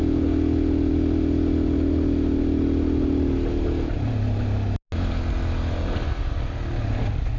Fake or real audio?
real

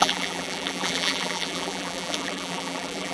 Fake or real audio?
fake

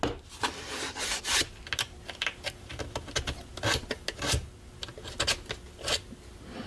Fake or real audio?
real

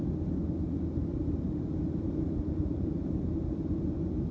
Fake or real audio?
real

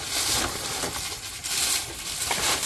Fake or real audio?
real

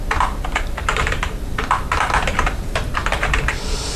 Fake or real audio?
fake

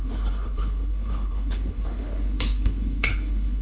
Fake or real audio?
fake